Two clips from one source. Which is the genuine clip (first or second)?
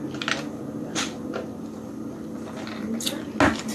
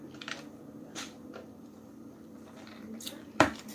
first